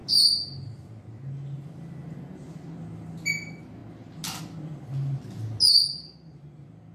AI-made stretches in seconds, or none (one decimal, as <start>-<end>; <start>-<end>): none